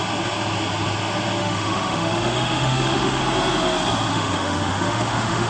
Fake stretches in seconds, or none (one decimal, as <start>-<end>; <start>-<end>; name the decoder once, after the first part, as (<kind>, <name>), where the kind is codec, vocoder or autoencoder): 1.4-3.2 (autoencoder, DAC-VAE); 4.1-5.5

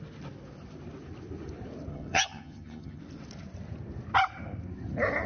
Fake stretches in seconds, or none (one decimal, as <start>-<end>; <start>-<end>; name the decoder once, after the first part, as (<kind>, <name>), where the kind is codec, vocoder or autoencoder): 1.9-3.0 (vocoder, HiFi-GAN)

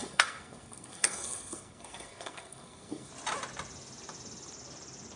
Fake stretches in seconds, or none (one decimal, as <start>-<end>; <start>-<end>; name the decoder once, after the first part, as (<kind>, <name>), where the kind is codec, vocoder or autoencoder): 0.0-3.1 (codec, SNAC)

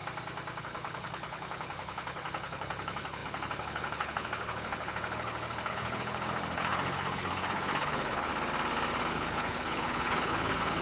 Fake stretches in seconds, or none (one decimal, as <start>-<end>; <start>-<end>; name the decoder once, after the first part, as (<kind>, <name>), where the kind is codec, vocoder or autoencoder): 0.6-8.3 (codec, HILCodec); 9.1-10.8

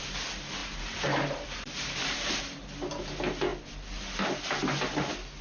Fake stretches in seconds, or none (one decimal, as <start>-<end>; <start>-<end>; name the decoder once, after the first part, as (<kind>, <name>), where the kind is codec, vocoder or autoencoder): 0.6-2.4 (vocoder, BigVGAN v2)

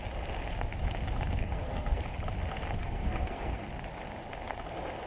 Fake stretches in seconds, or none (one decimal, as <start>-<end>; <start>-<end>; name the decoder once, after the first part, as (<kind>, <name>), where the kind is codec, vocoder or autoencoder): 1.4-2.0 (codec, SNAC); 2.8-3.7

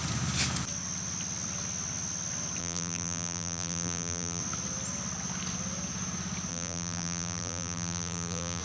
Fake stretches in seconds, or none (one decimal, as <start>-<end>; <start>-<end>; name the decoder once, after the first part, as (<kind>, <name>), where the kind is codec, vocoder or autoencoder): 2.6-4.4 (vocoder, BigVGAN v2); 6.5-8.6

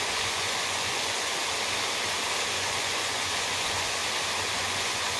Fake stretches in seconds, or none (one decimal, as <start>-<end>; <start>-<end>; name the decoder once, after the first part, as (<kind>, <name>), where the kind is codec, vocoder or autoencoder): 0.0-1.4 (vocoder, Vocos); 2.5-4.0; 4.5-5.2